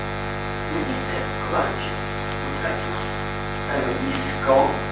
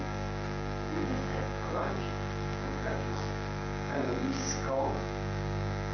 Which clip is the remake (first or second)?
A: second